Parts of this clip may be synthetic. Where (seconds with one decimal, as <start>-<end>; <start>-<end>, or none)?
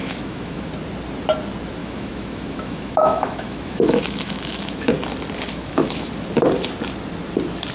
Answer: 0.0-0.7; 1.8-4.9; 5.5-6.1